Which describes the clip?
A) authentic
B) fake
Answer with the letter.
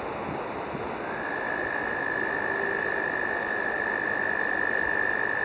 A